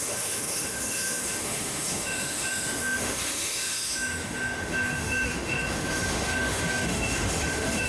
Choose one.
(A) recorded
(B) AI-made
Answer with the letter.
B